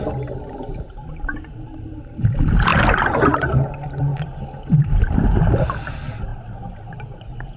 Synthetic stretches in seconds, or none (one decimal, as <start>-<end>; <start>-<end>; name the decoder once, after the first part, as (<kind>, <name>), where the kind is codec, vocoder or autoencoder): none